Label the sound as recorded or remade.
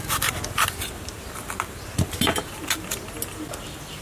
recorded